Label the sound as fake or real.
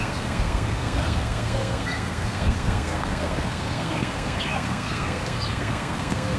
fake